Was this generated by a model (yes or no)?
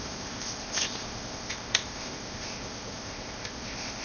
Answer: yes